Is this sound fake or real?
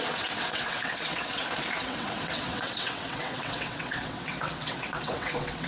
fake